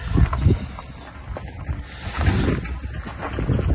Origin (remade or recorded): recorded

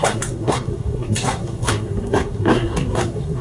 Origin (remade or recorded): remade